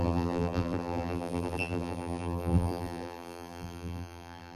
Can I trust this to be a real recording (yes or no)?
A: no